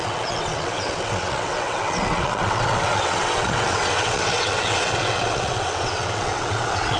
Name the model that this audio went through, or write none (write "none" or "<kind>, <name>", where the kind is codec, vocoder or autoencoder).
vocoder, WaveNeXt